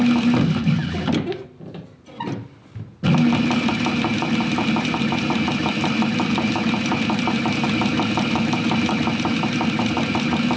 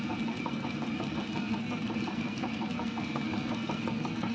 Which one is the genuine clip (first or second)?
first